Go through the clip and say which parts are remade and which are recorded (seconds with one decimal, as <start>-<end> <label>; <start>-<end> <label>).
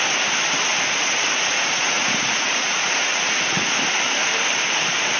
0.0-0.7 recorded; 0.7-3.8 remade; 3.8-5.2 recorded